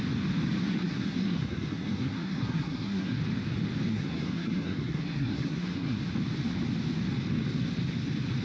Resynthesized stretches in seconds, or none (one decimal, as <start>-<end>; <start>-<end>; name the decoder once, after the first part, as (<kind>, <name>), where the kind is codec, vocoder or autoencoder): 0.6-3.2 (codec, SNAC); 3.9-6.0